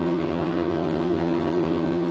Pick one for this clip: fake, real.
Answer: fake